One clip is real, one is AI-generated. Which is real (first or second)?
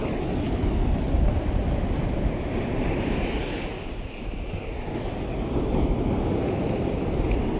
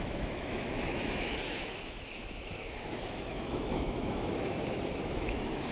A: first